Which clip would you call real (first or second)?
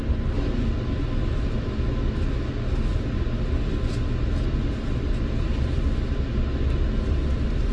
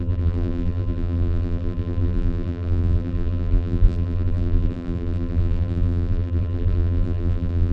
first